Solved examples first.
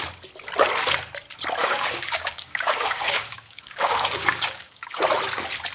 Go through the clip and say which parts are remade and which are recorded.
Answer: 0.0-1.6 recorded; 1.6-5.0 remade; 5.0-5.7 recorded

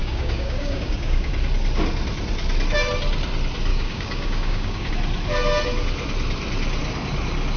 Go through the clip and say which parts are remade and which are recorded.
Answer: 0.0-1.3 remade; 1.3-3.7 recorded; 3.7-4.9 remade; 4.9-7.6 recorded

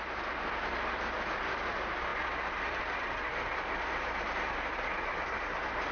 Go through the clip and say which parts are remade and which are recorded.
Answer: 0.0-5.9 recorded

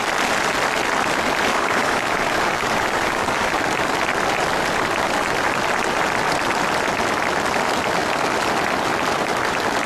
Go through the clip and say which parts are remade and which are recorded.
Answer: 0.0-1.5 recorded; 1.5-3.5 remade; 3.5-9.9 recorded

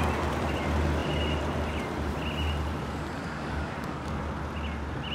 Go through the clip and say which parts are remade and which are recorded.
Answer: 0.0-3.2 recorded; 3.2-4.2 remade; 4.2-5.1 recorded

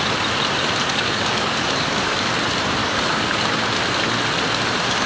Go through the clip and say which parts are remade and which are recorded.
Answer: 0.0-0.8 recorded; 0.8-2.3 remade; 2.3-2.8 recorded; 2.8-3.4 remade; 3.4-5.1 recorded

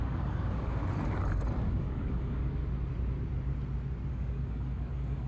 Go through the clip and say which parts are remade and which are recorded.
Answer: 0.0-0.8 remade; 0.8-1.6 recorded; 1.6-2.6 remade; 2.6-4.1 recorded; 4.1-5.3 remade